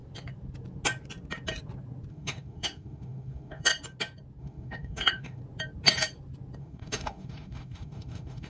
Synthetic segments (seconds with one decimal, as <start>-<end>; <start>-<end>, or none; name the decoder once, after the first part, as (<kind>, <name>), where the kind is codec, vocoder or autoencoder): 2.1-3.7 (autoencoder, DAC-VAE); 4.4-5.4; 6.6-8.5